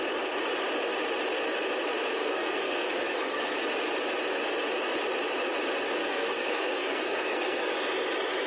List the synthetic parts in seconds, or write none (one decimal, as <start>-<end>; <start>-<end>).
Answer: 2.2-3.6; 6.0-7.7